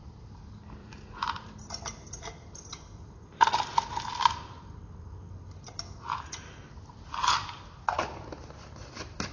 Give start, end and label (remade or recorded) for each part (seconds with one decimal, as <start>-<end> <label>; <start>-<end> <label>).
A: 0.0-0.8 recorded; 0.8-1.5 remade; 1.5-9.3 recorded